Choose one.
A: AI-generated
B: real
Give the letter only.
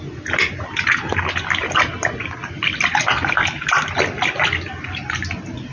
B